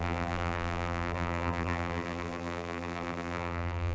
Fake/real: fake